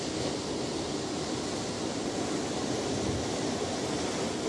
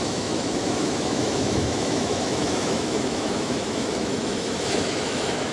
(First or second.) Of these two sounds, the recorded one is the first